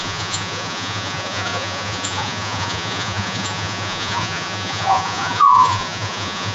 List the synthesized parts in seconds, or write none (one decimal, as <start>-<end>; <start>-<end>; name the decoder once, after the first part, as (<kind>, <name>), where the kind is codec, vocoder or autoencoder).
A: 0.0-6.5 (vocoder, Vocos)